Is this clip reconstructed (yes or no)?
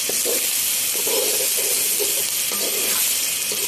no